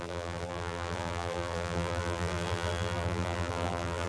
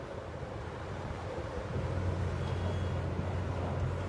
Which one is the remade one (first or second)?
first